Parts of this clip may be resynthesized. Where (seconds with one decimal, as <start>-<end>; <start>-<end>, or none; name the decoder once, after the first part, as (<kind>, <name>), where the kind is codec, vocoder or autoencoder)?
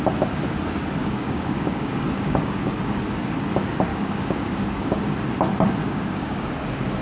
1.0-3.0 (codec, DAC); 3.9-5.0; 5.8-6.5